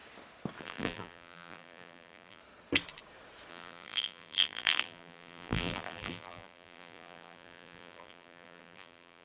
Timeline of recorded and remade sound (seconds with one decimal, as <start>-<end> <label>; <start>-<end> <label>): 0.0-0.6 recorded; 0.6-2.4 remade; 2.4-3.5 recorded; 3.5-9.2 remade